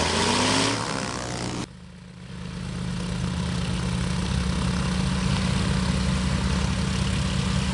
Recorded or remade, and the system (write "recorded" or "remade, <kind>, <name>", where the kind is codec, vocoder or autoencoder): recorded